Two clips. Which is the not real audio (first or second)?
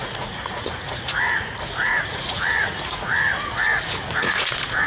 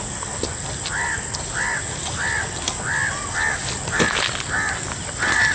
first